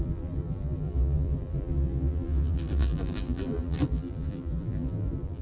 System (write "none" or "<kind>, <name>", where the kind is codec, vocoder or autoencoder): vocoder, BigVGAN v2